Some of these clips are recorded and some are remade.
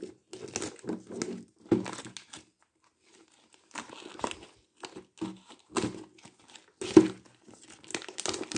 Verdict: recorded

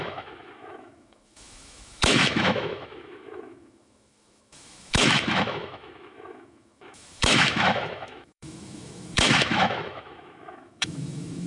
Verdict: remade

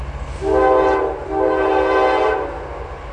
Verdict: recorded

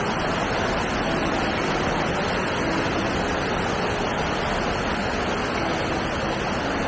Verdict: recorded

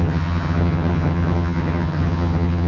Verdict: remade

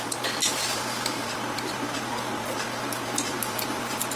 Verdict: recorded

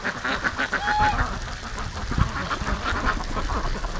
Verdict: recorded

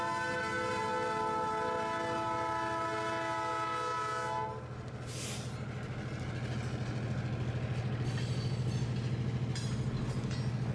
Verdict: recorded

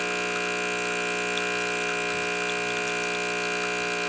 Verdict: recorded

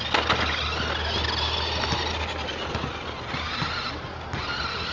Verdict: recorded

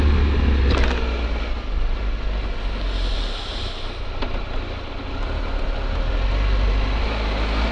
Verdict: recorded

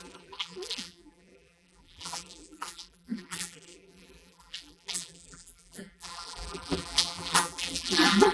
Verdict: remade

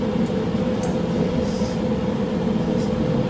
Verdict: remade